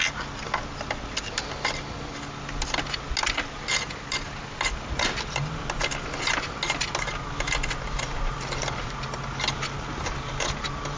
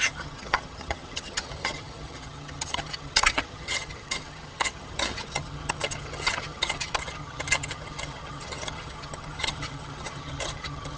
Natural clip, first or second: first